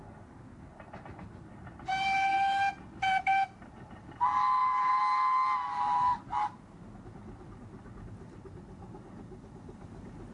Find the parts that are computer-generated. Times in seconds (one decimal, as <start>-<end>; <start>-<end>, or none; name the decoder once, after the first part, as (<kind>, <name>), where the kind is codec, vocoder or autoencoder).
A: none